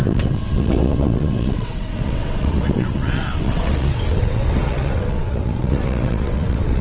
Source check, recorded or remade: remade